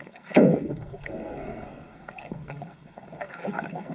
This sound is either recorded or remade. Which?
remade